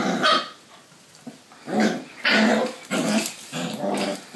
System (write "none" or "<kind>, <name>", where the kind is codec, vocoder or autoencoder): none